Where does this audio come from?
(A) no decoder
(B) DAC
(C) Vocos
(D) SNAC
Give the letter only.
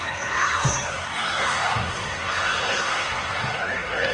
D